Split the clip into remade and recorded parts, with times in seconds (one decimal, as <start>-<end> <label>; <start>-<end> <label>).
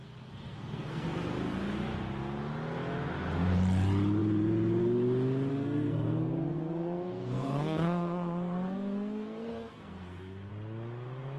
0.0-1.2 remade; 1.2-5.5 recorded; 5.5-10.5 remade; 10.5-11.4 recorded